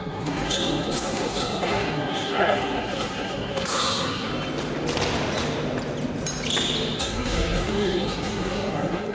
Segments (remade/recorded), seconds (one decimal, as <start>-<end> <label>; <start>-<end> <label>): 0.0-4.3 remade; 4.3-7.0 recorded; 7.0-9.1 remade